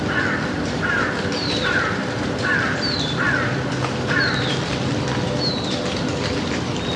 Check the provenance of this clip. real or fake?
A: fake